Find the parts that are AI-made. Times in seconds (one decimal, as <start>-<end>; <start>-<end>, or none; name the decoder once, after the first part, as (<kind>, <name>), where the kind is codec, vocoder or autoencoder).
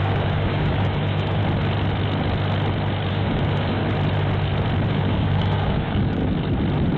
0.0-1.4 (codec, DAC); 3.1-3.8; 4.9-6.2